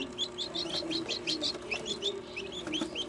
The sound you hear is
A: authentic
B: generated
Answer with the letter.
A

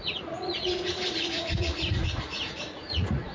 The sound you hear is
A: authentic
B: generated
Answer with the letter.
B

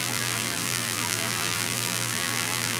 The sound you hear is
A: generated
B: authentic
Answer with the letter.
A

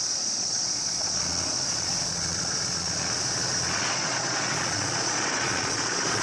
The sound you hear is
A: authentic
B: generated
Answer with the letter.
B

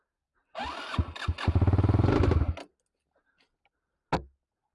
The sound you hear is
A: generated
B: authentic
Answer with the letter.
B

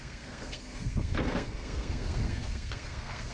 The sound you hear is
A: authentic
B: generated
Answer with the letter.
B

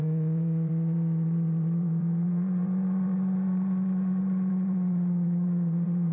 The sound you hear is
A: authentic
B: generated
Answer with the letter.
B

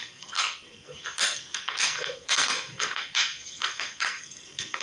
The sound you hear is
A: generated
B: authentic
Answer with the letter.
A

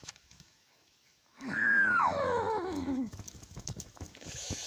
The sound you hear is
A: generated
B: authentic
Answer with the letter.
A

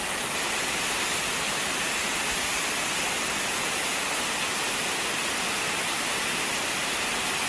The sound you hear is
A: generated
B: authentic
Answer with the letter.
B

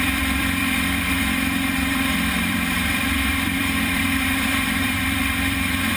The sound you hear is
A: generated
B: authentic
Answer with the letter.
A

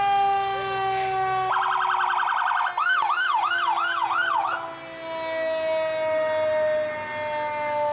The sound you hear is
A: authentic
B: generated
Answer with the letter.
A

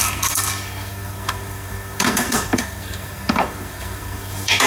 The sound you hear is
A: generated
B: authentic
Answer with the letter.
A